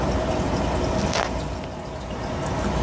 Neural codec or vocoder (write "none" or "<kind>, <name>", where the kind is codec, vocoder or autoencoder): none